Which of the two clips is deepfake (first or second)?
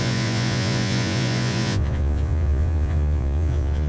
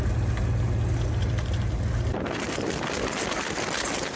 first